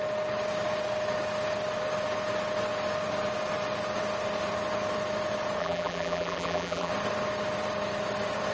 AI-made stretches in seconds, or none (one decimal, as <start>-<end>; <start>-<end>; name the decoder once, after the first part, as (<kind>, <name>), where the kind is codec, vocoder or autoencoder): 5.6-6.9 (vocoder, BigVGAN v2)

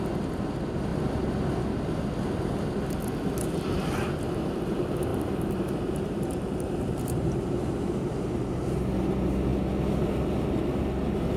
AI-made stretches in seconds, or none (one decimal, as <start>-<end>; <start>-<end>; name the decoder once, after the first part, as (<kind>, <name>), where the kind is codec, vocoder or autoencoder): 5.1-8.8 (vocoder, BigVGAN v2)

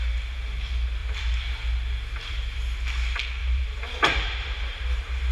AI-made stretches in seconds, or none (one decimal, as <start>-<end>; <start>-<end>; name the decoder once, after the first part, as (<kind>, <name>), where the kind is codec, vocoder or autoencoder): 3.4-5.3 (vocoder, BigVGAN v2)

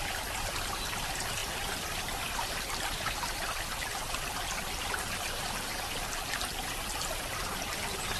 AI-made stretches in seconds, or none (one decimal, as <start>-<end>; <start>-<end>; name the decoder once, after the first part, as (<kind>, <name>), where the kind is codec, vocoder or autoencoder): 1.4-6.3 (vocoder, BigVGAN v2)